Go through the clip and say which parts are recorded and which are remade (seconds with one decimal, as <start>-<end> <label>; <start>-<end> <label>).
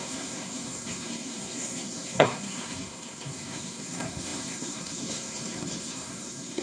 0.0-6.6 remade